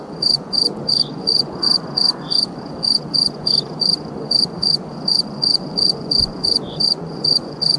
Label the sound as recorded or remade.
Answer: remade